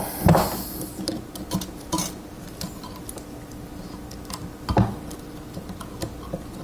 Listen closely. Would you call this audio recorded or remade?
recorded